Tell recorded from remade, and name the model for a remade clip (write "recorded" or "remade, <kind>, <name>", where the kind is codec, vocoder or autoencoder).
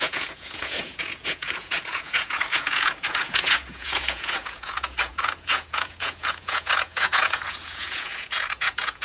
remade, vocoder, Vocos